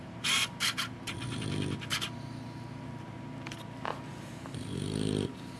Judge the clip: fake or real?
fake